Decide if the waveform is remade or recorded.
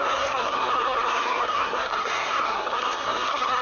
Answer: remade